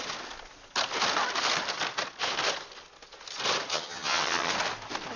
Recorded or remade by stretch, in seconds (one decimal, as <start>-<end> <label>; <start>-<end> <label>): 0.0-3.7 recorded; 3.7-4.5 remade; 4.5-5.2 recorded